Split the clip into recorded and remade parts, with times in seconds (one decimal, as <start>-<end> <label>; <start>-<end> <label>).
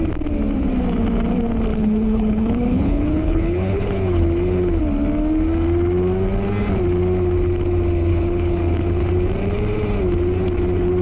0.0-1.7 recorded; 1.7-4.8 remade; 4.8-8.1 recorded; 8.1-9.1 remade; 9.1-11.0 recorded